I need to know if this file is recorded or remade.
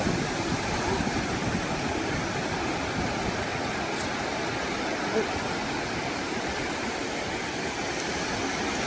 recorded